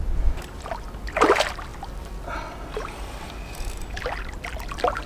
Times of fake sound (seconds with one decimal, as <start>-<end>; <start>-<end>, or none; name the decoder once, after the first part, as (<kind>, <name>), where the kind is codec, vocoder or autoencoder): none